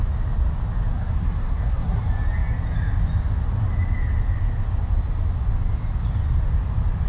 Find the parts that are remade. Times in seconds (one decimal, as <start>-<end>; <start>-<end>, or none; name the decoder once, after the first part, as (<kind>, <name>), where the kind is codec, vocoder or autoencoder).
0.9-2.0 (codec, SNAC)